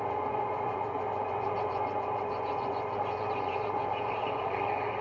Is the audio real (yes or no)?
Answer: no